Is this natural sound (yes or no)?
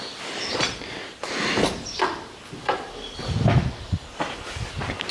yes